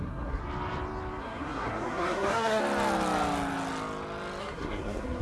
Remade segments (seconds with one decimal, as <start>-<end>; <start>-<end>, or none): 0.0-0.4; 1.2-2.6; 4.4-5.2